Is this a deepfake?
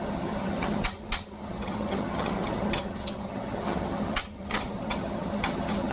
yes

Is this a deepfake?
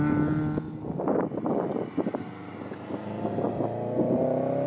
no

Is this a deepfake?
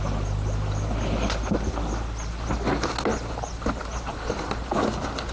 no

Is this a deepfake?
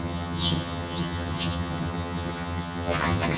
yes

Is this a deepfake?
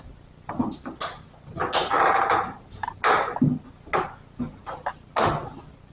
no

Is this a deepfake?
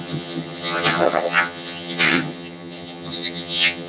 yes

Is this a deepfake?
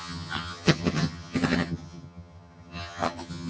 yes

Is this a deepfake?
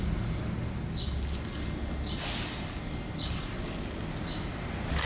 no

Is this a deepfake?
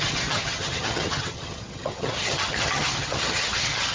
yes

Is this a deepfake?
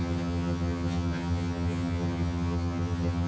yes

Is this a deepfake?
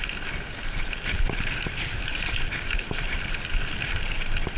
no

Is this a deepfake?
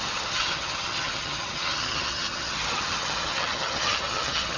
yes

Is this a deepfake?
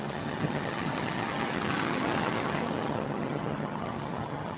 yes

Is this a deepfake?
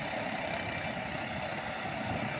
no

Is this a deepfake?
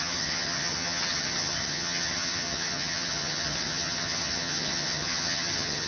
yes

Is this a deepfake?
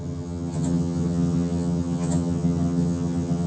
yes